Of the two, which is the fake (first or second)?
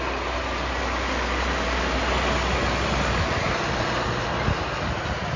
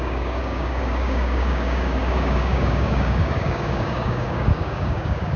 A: second